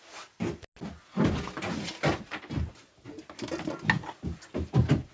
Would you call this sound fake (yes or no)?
no